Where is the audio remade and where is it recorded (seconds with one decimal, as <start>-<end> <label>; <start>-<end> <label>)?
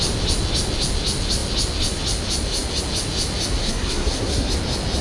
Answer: 0.0-3.6 recorded; 3.6-4.5 remade; 4.5-5.0 recorded